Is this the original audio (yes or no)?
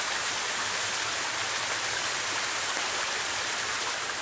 yes